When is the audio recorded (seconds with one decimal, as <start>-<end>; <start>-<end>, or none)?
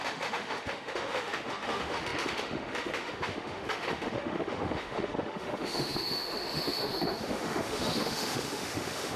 none